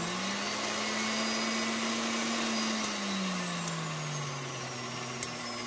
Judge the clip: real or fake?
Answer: real